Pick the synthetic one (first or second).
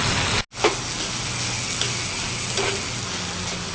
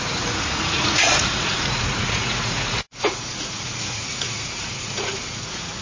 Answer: second